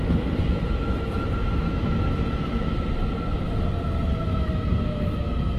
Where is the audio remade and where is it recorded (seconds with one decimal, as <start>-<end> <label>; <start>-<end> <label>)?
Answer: 0.0-2.7 remade; 2.7-4.1 recorded; 4.1-5.6 remade